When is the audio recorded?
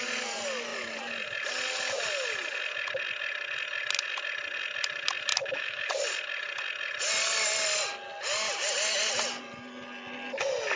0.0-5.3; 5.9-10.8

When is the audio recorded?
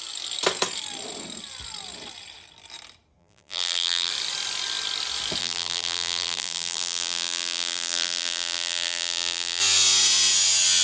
0.0-3.2; 4.1-5.4; 9.6-10.8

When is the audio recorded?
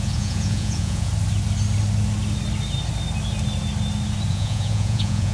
1.1-4.3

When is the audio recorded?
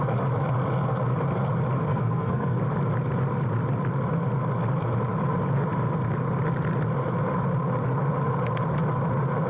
0.0-1.9; 2.6-9.5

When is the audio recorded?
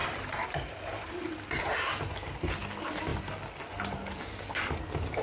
1.1-5.2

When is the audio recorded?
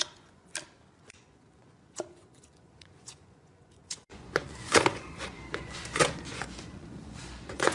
0.5-1.0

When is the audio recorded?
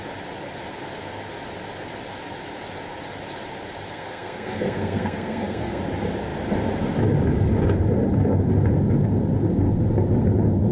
0.0-3.9; 5.8-10.7